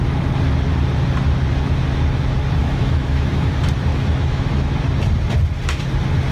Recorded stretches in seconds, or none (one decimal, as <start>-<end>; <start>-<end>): 0.0-2.6; 3.5-3.9; 4.7-6.3